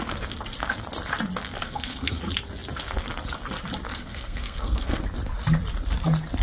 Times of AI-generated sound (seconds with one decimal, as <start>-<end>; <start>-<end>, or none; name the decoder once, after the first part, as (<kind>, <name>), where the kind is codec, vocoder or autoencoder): 1.6-2.2 (codec, SNAC); 3.9-5.0